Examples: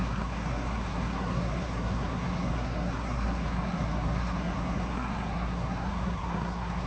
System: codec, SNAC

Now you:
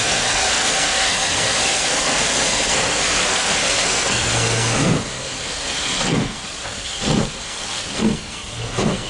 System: codec, SNAC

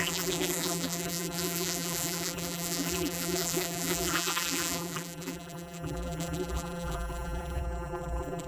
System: vocoder, BigVGAN v2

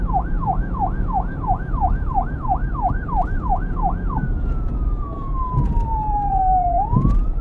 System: vocoder, Vocos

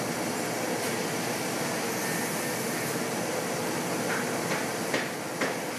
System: none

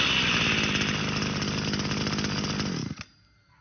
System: none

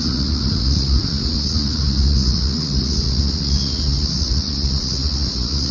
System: vocoder, Vocos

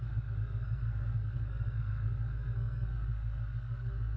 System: codec, SNAC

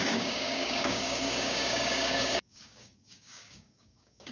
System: codec, DAC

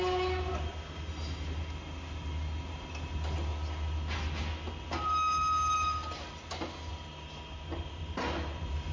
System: none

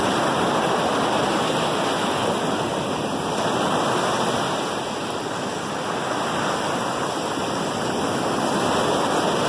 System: none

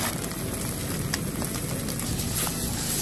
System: none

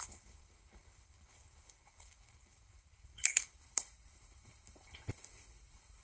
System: codec, HILCodec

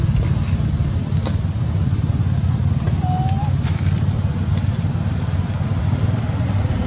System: none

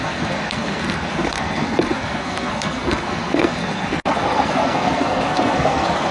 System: codec, SNAC